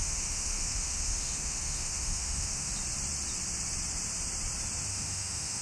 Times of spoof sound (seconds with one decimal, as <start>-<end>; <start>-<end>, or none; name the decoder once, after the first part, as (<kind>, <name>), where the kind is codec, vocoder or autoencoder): 0.0-2.7 (autoencoder, DAC-VAE); 4.9-5.6